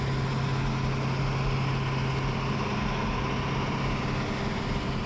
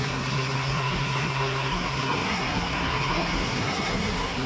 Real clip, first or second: first